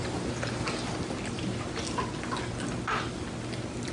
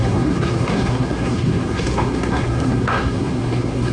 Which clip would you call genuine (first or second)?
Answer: first